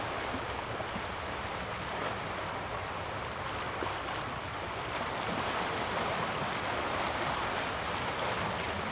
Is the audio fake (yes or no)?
no